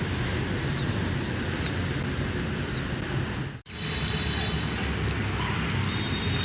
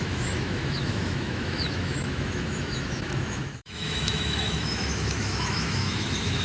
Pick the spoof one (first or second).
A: second